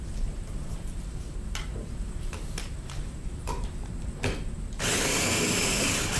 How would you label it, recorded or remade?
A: remade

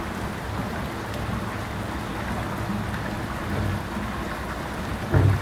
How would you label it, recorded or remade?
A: recorded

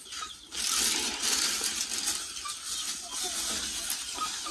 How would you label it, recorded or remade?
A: recorded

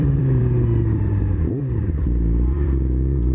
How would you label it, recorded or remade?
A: remade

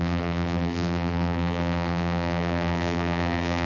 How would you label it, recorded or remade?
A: remade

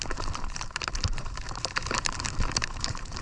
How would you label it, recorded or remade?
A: remade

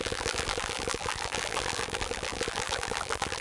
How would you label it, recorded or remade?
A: remade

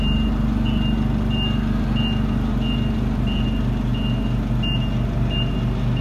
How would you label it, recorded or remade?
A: recorded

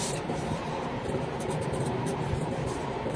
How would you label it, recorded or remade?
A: remade